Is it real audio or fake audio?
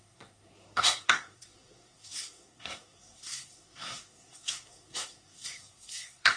fake